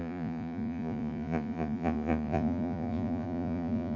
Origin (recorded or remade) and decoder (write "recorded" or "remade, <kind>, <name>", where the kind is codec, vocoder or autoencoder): remade, vocoder, Vocos